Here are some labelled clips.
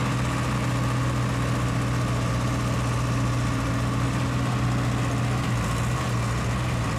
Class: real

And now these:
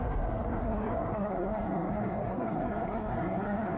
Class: fake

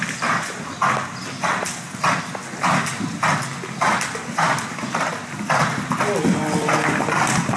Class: real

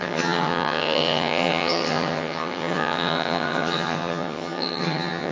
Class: fake